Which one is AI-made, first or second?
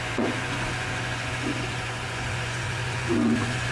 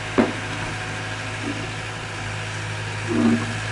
first